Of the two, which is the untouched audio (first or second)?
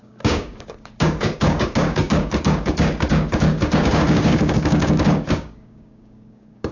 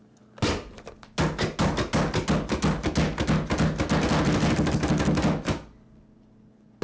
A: second